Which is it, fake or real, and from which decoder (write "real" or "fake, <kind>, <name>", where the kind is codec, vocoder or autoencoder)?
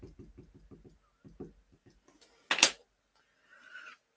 real